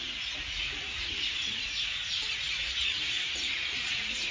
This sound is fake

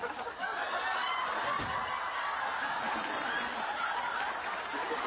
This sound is real